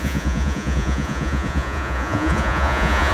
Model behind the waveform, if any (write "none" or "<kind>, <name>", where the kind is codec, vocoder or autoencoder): vocoder, Vocos